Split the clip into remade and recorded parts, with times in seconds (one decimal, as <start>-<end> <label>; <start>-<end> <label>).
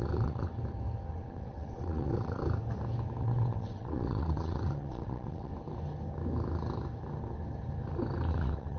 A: 0.0-0.5 remade; 0.5-1.1 recorded; 1.1-2.4 remade; 2.4-3.2 recorded; 3.2-5.5 remade; 5.5-8.3 recorded; 8.3-8.8 remade